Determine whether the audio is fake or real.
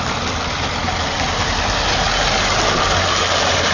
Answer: real